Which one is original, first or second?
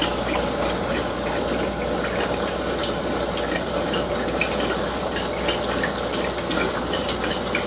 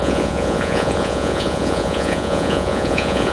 first